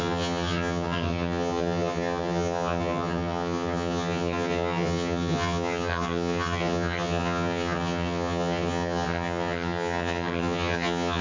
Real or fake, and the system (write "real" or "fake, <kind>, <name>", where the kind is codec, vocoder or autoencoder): fake, vocoder, HiFi-GAN